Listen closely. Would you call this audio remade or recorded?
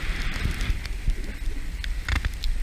recorded